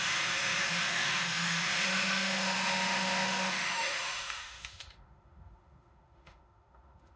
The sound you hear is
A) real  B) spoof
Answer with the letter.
B